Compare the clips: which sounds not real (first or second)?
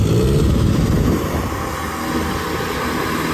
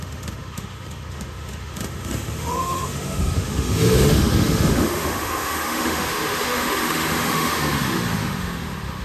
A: second